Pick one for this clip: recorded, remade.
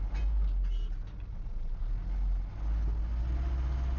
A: recorded